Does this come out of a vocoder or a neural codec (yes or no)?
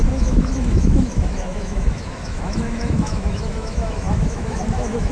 yes